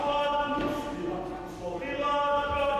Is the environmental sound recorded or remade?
recorded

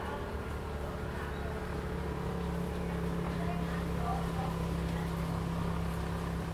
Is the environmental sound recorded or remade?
recorded